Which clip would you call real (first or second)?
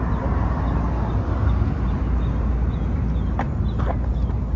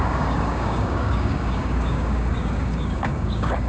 first